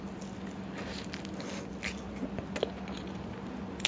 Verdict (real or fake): real